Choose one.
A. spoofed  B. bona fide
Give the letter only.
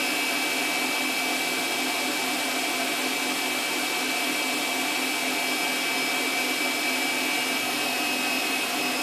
B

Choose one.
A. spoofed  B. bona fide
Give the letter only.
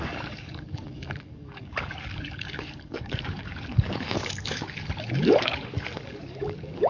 A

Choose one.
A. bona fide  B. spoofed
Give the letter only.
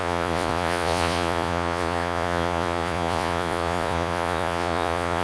B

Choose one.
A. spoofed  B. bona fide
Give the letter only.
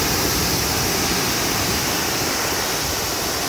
B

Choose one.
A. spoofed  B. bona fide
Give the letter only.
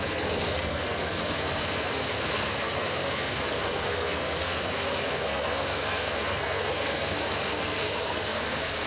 A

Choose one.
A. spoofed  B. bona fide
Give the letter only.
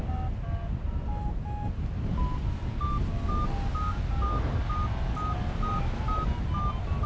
B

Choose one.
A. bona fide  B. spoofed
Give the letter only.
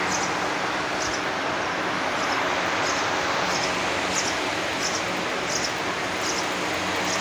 A